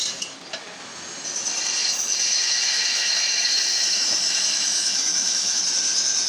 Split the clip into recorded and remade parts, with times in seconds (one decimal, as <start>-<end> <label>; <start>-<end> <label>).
0.0-1.8 recorded; 1.8-5.6 remade; 5.6-6.3 recorded